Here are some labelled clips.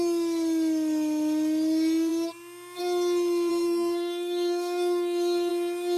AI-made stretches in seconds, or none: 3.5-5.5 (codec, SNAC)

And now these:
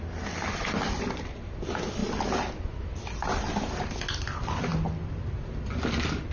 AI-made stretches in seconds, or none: none

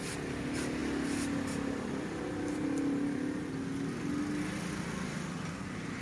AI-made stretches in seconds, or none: none

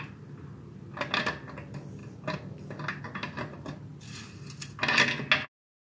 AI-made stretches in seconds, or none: none

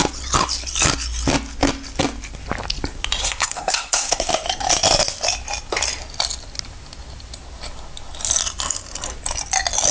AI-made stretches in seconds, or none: 3.2-4.3 (codec, SNAC)